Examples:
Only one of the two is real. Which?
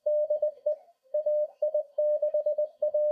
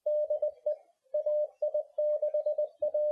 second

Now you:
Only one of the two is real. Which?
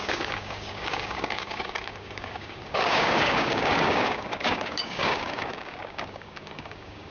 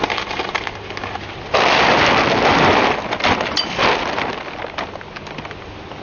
second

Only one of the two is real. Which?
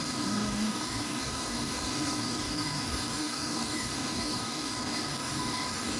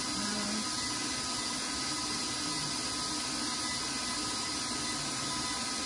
second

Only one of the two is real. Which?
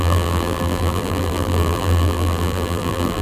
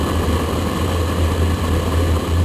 second